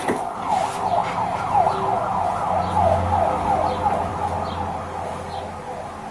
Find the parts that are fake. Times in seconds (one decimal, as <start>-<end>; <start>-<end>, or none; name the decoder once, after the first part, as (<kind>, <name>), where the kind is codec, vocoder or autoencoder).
none

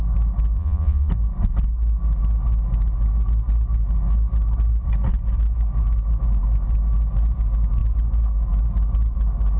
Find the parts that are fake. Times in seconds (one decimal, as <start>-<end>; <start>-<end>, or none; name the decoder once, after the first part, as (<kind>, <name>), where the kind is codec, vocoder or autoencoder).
0.6-1.1 (vocoder, Vocos)

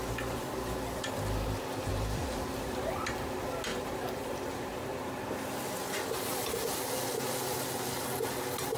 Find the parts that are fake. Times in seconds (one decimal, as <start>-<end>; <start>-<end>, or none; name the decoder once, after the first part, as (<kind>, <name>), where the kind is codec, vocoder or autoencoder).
1.9-2.4 (vocoder, BigVGAN v2); 3.7-5.2

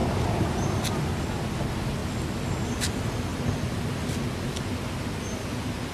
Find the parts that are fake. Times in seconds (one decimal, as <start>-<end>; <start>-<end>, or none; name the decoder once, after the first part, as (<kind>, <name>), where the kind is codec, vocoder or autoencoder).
0.0-0.8 (vocoder, BigVGAN v2)

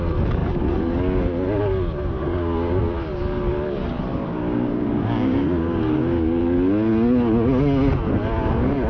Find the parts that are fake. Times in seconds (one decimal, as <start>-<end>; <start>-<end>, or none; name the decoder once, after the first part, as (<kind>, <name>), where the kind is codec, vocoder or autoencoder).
2.3-2.8 (codec, DAC); 4.1-6.4